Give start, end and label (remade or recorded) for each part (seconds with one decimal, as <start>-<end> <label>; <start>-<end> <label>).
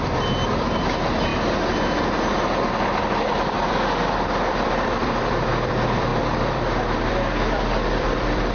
0.0-1.3 remade; 1.3-4.3 recorded; 4.3-8.5 remade